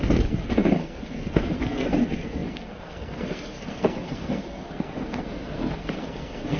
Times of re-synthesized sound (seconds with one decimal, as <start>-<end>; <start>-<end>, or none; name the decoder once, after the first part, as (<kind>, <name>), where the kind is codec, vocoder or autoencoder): 0.0-6.6 (codec, SNAC)